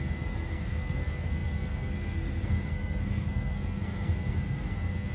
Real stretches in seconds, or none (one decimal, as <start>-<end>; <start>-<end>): none

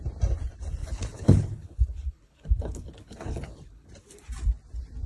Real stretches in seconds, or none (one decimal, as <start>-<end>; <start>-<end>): 0.0-0.8; 3.9-5.1